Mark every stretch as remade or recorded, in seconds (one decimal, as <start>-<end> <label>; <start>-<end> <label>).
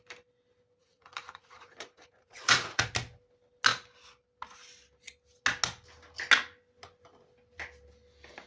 0.0-0.8 recorded; 0.8-2.9 remade; 2.9-8.5 recorded